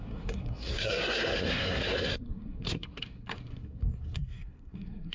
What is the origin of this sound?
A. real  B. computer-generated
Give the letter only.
B